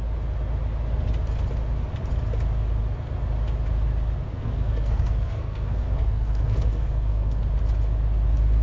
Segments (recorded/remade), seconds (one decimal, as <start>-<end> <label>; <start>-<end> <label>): 0.0-4.3 recorded; 4.3-7.4 remade; 7.4-8.6 recorded